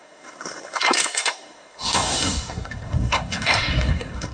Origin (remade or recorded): remade